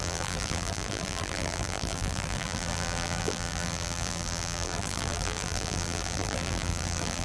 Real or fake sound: fake